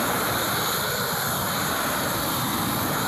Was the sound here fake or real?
fake